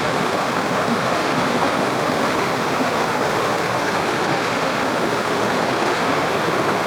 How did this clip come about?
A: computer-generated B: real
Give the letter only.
A